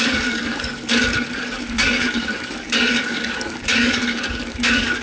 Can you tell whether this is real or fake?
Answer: fake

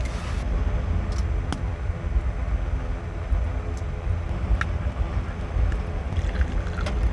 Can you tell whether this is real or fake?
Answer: real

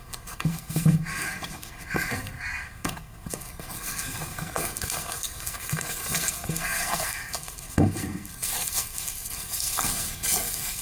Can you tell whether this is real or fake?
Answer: fake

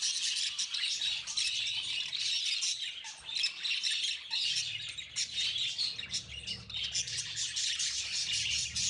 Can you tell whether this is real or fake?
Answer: real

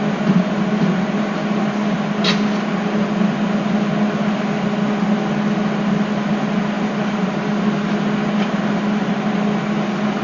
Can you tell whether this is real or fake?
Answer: real